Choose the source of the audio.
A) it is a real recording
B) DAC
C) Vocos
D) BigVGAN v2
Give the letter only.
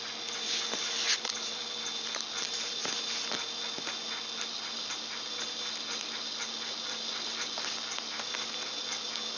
A